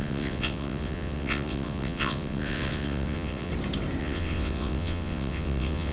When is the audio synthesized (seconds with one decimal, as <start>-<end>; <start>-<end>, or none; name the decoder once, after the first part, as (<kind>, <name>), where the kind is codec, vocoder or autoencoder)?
0.0-3.5 (vocoder, WaveNeXt); 4.0-5.9